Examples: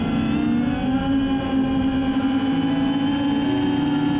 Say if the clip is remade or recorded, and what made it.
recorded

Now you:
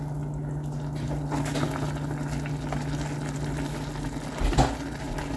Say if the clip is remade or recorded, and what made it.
recorded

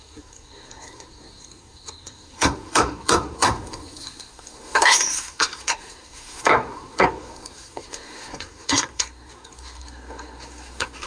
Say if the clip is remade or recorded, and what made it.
remade, codec, SNAC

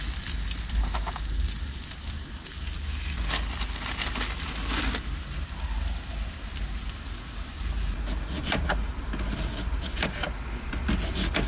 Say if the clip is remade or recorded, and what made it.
recorded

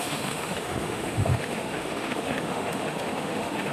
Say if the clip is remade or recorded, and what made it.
remade, autoencoder, DAC-VAE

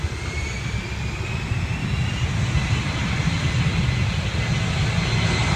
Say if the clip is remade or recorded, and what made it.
recorded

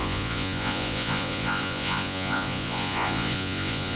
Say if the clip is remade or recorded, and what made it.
remade, vocoder, Vocos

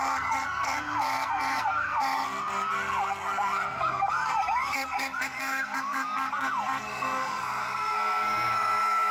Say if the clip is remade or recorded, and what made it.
remade, codec, SNAC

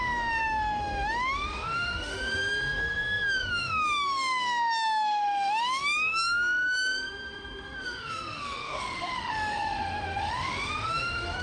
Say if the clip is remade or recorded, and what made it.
remade, autoencoder, DAC-VAE